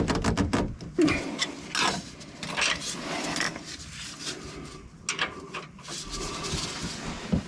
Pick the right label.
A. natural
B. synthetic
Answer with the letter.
A